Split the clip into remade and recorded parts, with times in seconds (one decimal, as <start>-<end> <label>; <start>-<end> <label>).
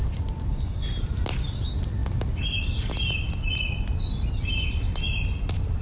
0.0-5.8 recorded